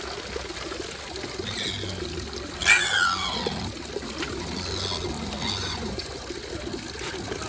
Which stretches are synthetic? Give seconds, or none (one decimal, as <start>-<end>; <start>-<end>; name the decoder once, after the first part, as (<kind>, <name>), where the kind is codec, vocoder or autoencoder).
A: 5.6-6.1 (vocoder, Vocos)